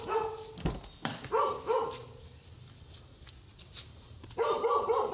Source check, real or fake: real